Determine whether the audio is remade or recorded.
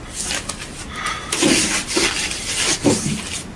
recorded